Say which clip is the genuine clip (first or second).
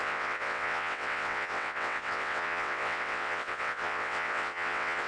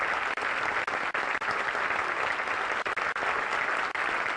second